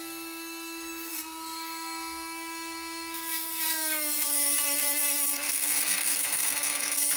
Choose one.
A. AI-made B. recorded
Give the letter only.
A